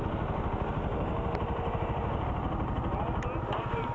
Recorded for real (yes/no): yes